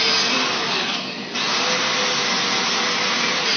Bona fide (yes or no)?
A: yes